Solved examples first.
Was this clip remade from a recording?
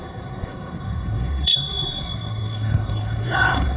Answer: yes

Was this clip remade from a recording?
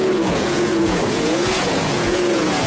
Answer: yes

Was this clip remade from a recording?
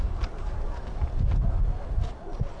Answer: no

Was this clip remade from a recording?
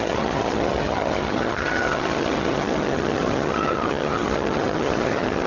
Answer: yes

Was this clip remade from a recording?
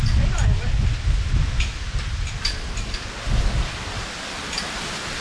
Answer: no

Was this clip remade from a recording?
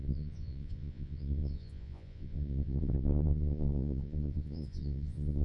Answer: yes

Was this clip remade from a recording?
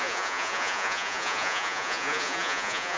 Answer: yes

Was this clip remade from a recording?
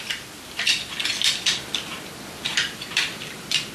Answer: yes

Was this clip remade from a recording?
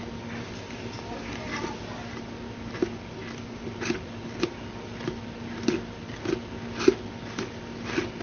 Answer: no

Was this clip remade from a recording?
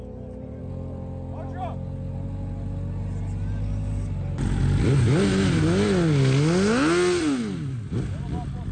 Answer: no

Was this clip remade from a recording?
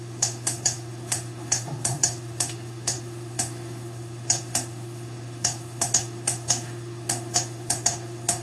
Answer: yes